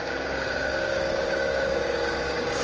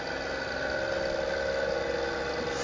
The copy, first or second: first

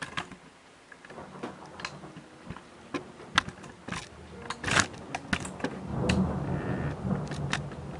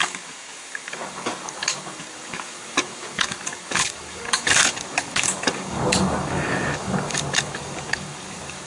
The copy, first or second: second